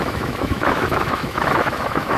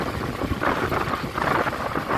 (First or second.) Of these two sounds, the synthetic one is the first